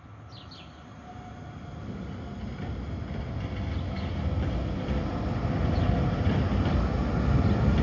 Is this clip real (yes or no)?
yes